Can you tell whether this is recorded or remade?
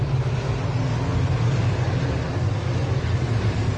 recorded